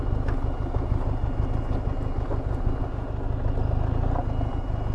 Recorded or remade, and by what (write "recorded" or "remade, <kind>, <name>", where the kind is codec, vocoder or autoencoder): recorded